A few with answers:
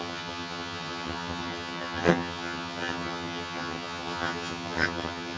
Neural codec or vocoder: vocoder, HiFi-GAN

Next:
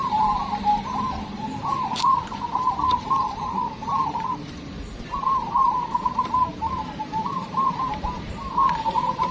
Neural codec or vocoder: vocoder, BigVGAN v2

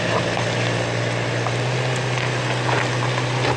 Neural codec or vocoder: none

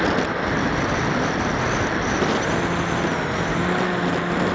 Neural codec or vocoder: none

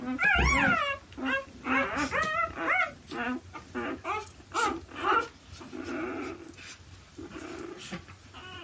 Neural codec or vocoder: none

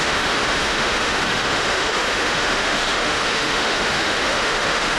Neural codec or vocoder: autoencoder, DAC-VAE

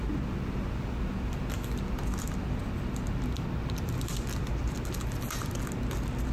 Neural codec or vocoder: none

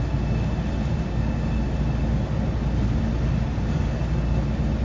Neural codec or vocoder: none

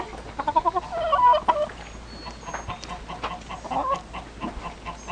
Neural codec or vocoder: none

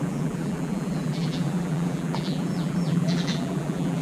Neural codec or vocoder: vocoder, BigVGAN v2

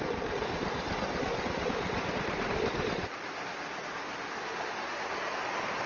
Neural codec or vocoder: vocoder, BigVGAN v2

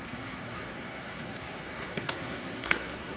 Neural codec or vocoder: codec, SNAC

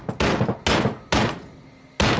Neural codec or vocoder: none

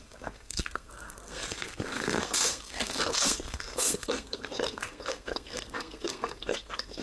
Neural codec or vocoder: codec, SNAC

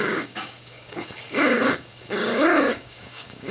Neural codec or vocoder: codec, DAC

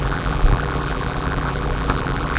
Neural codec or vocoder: vocoder, BigVGAN v2